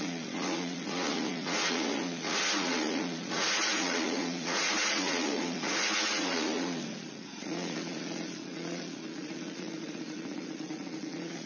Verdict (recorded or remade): remade